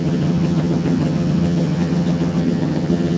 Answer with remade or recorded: remade